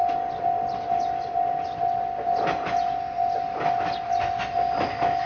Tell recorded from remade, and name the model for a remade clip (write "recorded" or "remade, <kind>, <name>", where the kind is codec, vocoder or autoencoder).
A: recorded